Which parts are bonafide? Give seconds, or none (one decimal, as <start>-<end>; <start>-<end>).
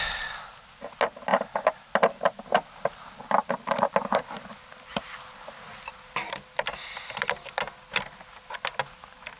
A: 0.0-9.4